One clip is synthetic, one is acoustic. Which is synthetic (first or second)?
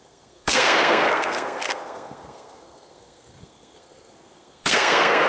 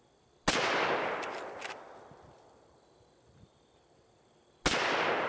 first